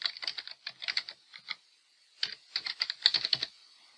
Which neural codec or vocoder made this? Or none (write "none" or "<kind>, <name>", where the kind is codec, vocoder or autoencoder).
none